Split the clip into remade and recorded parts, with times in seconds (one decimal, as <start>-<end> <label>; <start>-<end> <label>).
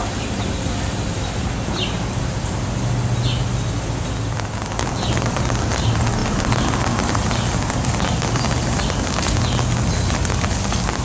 0.0-11.0 recorded